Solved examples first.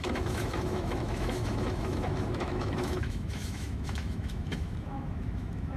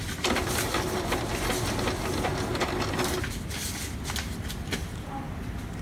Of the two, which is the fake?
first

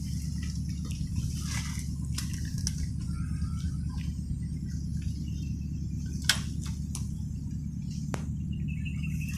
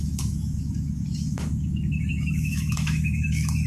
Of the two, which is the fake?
second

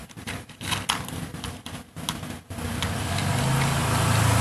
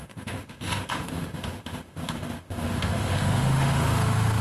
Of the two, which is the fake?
second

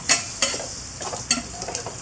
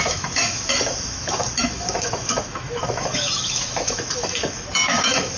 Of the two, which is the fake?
second